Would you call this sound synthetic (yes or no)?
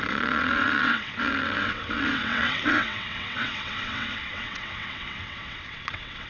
yes